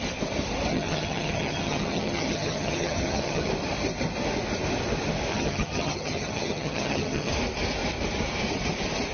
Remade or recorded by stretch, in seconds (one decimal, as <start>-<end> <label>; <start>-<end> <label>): 0.0-0.7 recorded; 0.7-3.5 remade; 3.5-5.3 recorded; 5.3-7.3 remade; 7.3-9.1 recorded